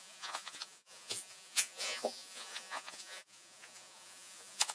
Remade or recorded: remade